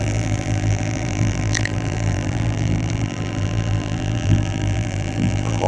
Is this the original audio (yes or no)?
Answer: no